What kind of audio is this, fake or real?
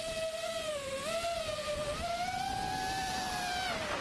real